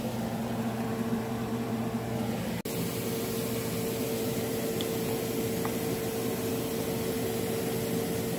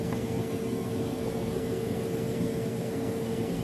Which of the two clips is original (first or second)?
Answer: first